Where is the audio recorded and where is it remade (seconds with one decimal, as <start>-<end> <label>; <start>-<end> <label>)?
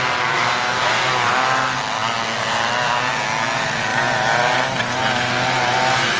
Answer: 0.0-6.2 recorded